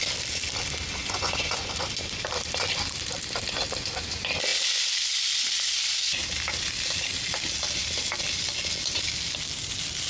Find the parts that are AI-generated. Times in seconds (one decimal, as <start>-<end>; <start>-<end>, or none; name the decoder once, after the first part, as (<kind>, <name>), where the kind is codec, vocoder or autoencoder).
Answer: 1.0-1.7 (vocoder, Vocos)